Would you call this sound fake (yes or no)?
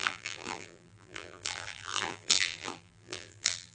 yes